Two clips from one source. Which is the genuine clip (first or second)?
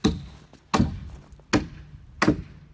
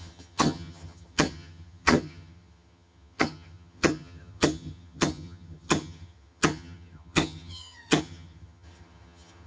first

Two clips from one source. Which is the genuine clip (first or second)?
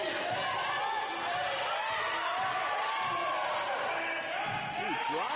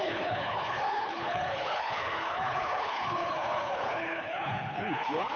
first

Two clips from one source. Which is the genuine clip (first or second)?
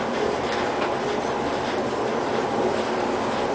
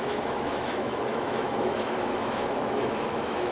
first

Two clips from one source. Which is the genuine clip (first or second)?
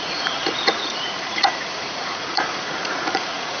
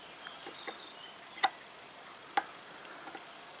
second